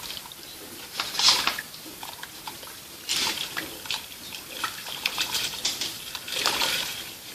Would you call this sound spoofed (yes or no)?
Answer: yes